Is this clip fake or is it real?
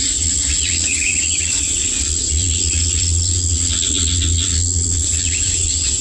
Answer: fake